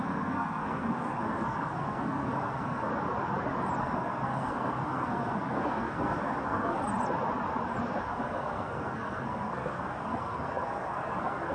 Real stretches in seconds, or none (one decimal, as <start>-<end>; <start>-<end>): 2.9-3.8; 6.8-8.0